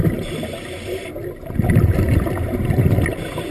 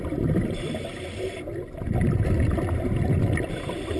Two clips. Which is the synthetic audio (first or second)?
second